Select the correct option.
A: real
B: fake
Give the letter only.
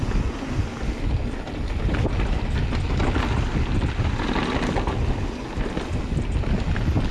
A